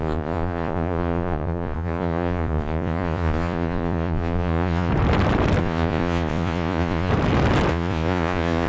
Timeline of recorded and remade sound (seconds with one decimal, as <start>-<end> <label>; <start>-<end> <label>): 0.0-4.9 remade; 4.9-5.6 recorded; 5.6-7.1 remade; 7.1-7.7 recorded; 7.7-8.7 remade